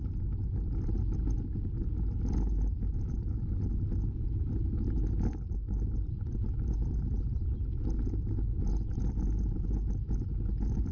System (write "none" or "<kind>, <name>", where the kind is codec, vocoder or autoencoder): none